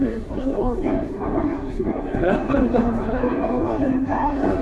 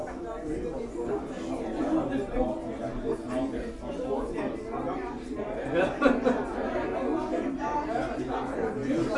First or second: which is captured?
second